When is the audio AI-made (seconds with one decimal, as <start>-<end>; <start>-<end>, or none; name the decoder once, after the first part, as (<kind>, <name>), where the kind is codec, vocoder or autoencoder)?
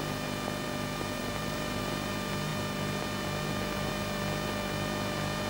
1.2-1.8 (vocoder, BigVGAN v2)